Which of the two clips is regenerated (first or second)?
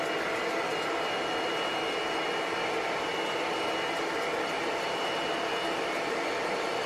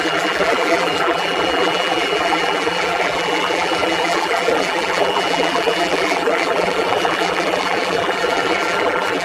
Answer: second